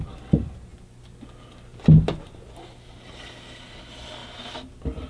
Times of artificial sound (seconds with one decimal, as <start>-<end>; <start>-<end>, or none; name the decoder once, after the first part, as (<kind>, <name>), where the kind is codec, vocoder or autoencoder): none